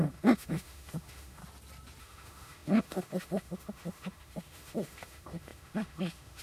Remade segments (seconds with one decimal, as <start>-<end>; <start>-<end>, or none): 0.0-1.4; 2.0-6.4